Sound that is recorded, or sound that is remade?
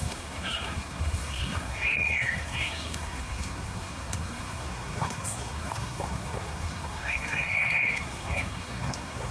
remade